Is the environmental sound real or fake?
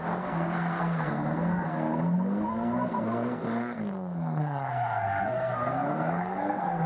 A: fake